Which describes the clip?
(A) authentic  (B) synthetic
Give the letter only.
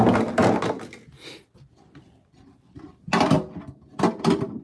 A